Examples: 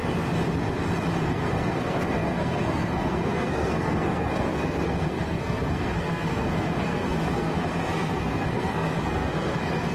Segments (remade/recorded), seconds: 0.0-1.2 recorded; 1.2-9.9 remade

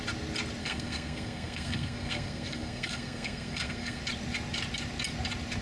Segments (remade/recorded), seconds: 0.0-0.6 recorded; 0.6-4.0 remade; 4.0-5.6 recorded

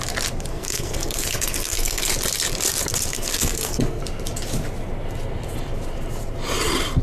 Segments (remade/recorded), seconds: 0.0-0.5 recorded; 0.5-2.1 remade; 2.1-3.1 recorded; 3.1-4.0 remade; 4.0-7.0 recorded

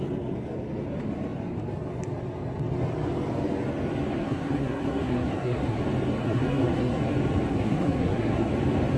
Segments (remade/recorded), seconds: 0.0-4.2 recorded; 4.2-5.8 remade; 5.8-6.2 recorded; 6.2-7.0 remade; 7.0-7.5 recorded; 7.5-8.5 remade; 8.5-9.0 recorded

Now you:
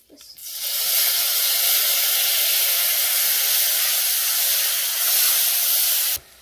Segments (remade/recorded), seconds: 0.0-6.4 recorded

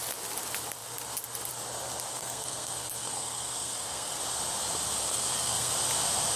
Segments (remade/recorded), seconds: 0.0-2.1 recorded; 2.1-4.2 remade; 4.2-5.0 recorded; 5.0-5.7 remade; 5.7-6.4 recorded